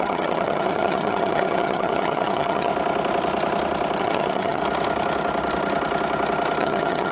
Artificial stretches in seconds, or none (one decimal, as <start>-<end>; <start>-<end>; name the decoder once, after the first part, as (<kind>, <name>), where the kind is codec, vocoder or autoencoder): 0.0-2.7 (vocoder, HiFi-GAN); 4.0-4.6; 6.6-7.1